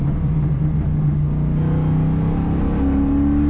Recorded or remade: recorded